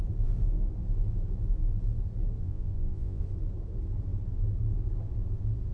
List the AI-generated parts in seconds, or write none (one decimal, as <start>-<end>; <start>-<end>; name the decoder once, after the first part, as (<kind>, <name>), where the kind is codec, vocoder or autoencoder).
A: 2.4-3.2 (vocoder, Vocos)